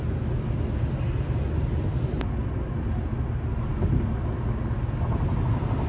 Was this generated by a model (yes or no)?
no